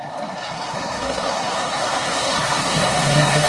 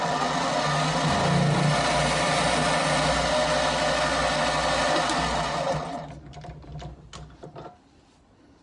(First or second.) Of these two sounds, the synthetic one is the first